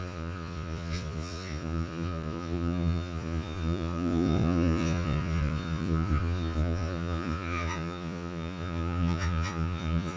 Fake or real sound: fake